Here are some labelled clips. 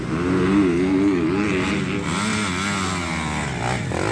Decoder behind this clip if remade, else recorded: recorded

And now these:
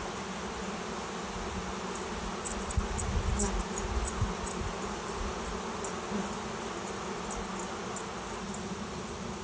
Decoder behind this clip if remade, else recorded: recorded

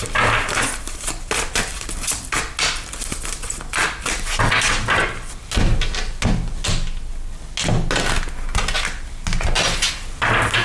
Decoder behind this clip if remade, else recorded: recorded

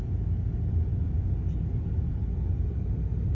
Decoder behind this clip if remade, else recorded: recorded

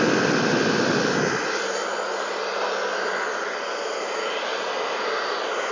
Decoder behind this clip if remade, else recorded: recorded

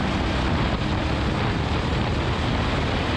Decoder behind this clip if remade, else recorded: recorded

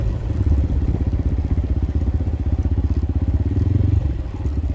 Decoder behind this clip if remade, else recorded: recorded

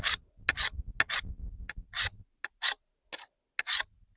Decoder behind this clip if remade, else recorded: recorded